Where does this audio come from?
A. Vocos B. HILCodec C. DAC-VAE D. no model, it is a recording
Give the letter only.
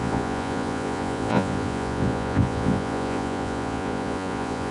A